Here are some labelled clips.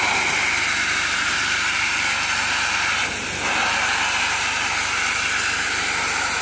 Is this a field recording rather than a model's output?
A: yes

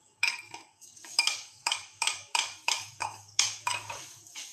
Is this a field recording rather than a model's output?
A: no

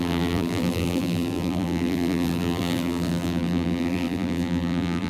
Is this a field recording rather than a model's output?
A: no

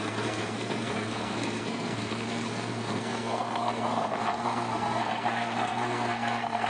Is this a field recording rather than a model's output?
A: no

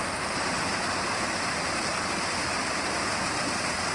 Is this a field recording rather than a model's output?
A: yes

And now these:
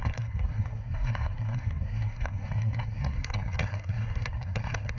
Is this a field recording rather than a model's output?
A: no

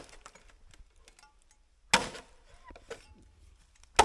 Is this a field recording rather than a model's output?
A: yes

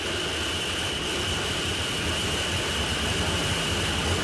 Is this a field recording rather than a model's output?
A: yes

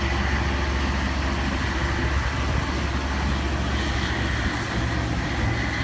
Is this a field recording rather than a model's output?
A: yes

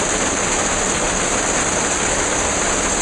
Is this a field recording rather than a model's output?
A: yes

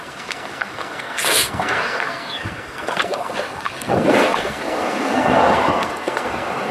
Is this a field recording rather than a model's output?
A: no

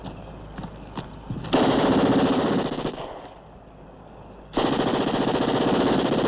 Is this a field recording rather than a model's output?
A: yes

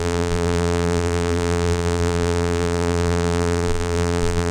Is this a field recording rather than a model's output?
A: no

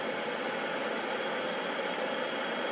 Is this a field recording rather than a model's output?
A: yes